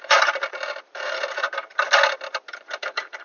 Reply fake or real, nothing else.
fake